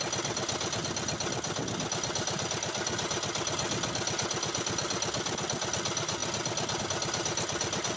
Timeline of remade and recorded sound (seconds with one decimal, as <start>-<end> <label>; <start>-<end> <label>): 0.0-8.0 recorded

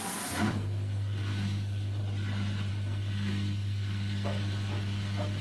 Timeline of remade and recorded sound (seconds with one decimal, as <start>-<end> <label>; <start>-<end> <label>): 0.0-2.0 remade; 2.0-2.7 recorded; 2.7-5.4 remade

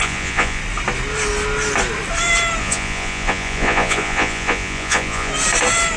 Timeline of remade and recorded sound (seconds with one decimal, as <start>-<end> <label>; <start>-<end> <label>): 0.0-0.6 remade; 0.6-2.6 recorded; 2.6-5.3 remade; 5.3-6.0 recorded